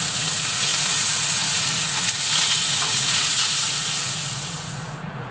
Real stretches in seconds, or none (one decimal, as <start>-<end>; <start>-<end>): none